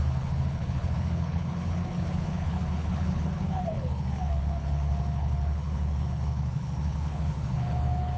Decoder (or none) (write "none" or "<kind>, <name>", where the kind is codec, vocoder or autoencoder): codec, HILCodec